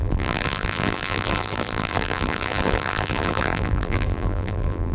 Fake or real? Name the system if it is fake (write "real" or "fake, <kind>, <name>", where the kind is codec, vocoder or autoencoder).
fake, vocoder, BigVGAN v2